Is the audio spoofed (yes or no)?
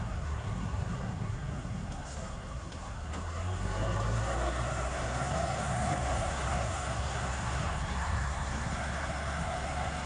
yes